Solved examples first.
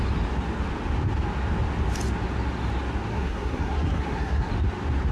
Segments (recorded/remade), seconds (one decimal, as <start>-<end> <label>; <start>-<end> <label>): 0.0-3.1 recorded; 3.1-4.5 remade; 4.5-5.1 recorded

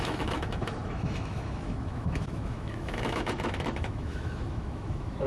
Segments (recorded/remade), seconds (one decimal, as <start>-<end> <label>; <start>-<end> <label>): 0.0-5.3 remade

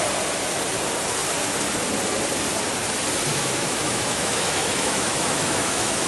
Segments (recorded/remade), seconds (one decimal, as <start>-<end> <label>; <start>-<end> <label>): 0.0-3.3 recorded; 3.3-6.1 remade

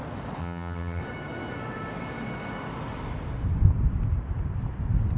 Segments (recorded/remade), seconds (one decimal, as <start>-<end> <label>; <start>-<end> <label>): 0.0-0.4 recorded; 0.4-1.0 remade; 1.0-5.2 recorded